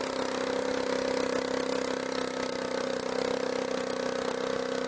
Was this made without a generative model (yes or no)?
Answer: yes